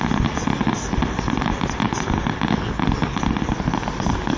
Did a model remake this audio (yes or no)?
no